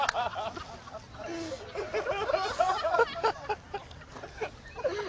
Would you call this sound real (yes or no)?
yes